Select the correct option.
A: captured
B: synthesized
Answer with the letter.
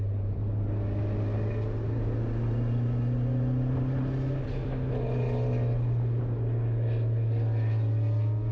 A